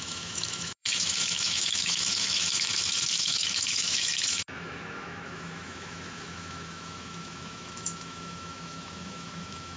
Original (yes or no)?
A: no